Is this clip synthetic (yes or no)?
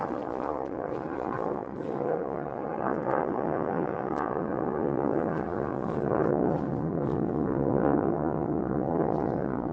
yes